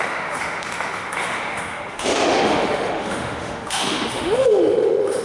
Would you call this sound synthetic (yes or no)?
yes